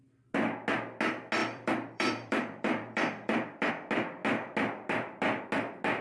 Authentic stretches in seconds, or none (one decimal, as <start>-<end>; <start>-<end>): 0.0-1.4; 3.7-6.0